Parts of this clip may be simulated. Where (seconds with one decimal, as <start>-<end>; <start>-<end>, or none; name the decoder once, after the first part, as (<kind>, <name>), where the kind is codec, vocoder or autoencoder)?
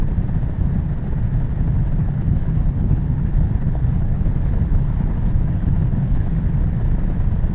2.0-6.5 (codec, HILCodec)